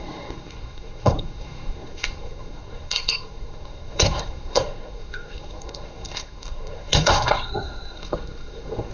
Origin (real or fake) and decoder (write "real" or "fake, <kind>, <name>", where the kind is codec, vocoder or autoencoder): fake, codec, SNAC